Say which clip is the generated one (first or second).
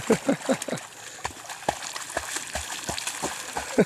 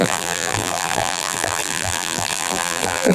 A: second